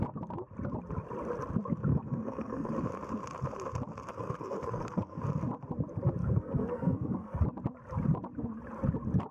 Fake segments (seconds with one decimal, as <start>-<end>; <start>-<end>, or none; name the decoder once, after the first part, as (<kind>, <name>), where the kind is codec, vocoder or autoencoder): 1.9-2.7 (codec, SNAC); 4.1-5.2; 6.2-7.4